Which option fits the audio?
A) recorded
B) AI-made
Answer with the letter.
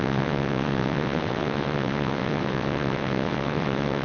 B